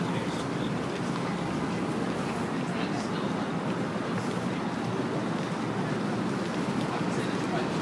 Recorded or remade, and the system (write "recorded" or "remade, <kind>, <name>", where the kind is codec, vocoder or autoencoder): recorded